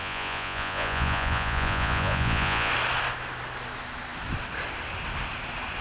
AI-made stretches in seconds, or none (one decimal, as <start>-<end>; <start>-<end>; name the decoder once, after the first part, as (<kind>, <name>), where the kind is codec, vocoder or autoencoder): 0.0-2.7 (vocoder, Vocos)